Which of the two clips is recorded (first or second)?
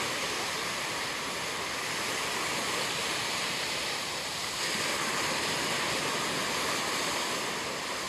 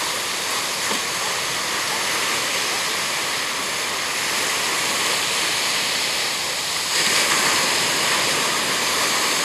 second